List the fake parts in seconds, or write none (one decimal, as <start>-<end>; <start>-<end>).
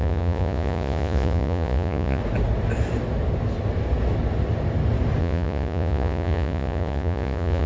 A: 0.0-2.2; 5.2-7.7